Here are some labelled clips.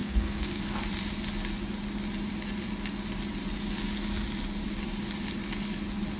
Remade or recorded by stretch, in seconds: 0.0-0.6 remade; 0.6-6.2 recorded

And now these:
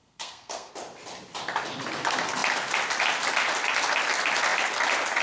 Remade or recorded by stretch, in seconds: 0.0-0.7 remade; 0.7-5.2 recorded

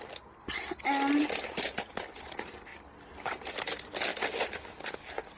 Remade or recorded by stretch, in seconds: 0.0-4.1 recorded; 4.1-4.7 remade; 4.7-5.4 recorded

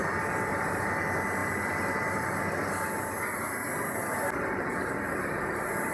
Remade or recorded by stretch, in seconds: 0.0-5.9 recorded